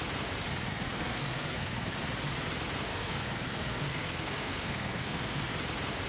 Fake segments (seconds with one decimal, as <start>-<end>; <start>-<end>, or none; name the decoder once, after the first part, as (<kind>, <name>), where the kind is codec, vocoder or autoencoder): 0.7-1.9 (codec, SNAC); 2.9-5.5